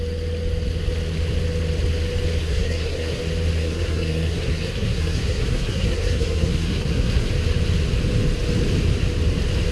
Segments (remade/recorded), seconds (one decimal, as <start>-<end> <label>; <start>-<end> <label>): 0.0-2.4 recorded; 2.4-3.2 remade; 3.2-3.6 recorded; 3.6-7.3 remade; 7.3-9.7 recorded